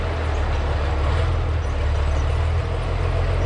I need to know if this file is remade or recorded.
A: recorded